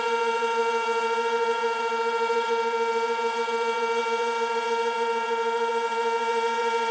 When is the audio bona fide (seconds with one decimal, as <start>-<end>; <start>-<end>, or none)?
none